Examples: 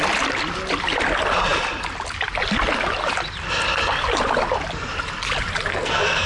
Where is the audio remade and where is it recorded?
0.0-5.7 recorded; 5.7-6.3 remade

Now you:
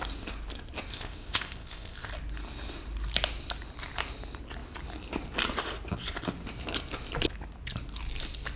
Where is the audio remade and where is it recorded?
0.0-0.9 recorded; 0.9-2.1 remade; 2.1-8.6 recorded

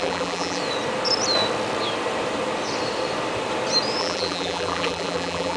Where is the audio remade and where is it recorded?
0.0-0.6 remade; 0.6-4.0 recorded; 4.0-5.6 remade

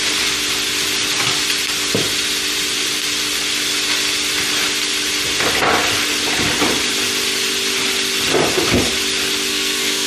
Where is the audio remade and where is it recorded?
0.0-9.5 recorded; 9.5-10.1 remade